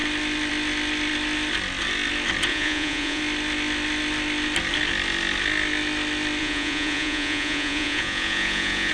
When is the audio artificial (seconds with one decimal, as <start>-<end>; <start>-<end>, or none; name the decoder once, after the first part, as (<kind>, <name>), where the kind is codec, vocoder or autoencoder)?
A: 2.5-3.2 (vocoder, Vocos); 6.4-8.9